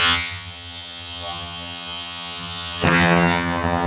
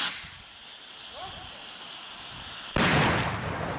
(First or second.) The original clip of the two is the second